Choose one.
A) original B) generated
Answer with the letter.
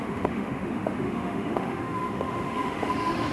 B